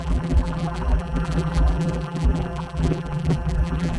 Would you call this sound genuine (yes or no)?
no